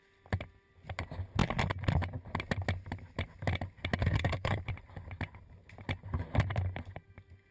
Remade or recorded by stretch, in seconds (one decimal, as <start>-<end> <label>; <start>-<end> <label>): 0.0-4.0 recorded; 4.0-4.6 remade; 4.6-7.5 recorded